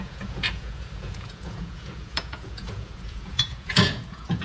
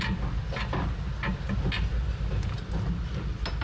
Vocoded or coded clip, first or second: first